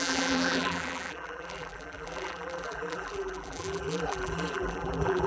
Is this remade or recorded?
remade